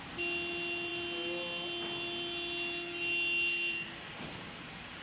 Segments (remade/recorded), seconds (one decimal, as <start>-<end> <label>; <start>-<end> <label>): 0.0-5.0 recorded